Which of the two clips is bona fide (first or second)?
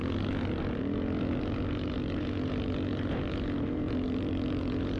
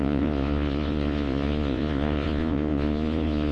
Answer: first